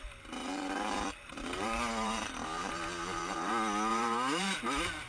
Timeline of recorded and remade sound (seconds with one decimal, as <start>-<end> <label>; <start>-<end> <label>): 0.0-0.4 recorded; 0.4-3.5 remade; 3.5-3.9 recorded; 3.9-4.6 remade; 4.6-5.1 recorded